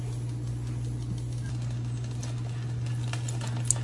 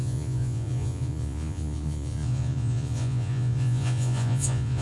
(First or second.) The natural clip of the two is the first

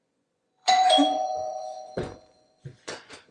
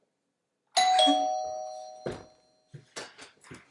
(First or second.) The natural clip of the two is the second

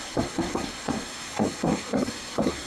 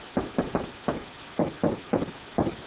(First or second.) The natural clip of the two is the second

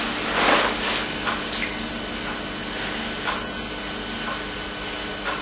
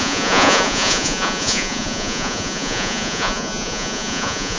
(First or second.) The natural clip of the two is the first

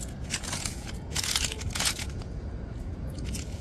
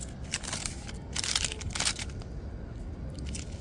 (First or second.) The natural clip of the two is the second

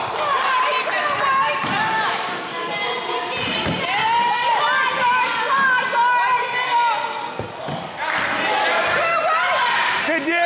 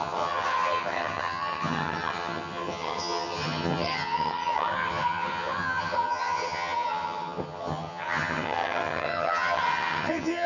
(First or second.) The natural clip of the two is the first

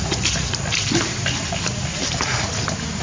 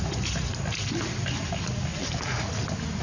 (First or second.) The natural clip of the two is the second